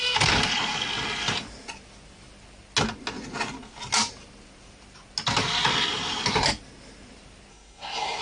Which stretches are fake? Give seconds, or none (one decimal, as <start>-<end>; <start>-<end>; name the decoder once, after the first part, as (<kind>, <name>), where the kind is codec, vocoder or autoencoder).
7.5-8.2 (codec, SNAC)